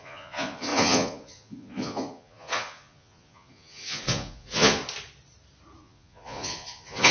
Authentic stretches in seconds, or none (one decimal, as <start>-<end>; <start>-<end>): 4.8-5.8